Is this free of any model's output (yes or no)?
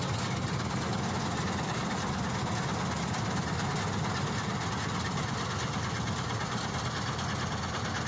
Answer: yes